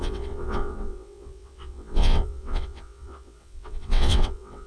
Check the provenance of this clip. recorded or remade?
remade